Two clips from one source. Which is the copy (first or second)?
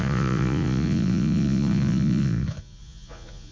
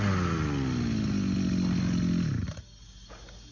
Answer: first